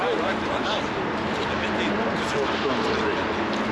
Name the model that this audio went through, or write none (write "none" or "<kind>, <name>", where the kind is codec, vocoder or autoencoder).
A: none